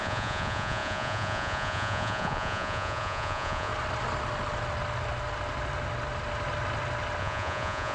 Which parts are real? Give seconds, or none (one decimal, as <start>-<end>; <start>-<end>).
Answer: 3.7-7.2